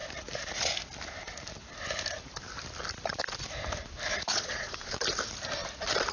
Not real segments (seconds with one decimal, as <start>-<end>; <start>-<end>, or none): 4.3-5.0